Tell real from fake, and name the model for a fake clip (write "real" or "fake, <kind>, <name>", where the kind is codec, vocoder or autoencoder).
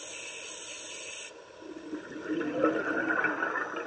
real